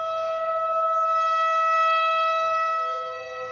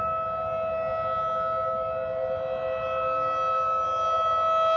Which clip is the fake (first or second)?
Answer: first